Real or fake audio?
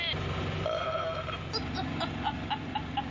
real